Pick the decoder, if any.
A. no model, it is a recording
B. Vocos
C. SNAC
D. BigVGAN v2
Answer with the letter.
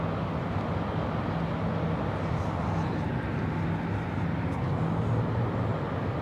A